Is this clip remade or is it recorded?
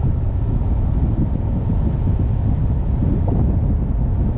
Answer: recorded